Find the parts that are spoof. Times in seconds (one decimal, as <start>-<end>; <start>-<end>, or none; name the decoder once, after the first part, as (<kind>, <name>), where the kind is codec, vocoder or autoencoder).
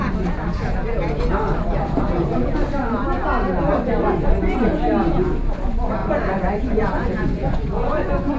6.0-8.4 (vocoder, Vocos)